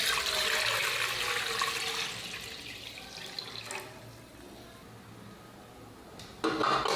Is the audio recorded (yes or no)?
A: yes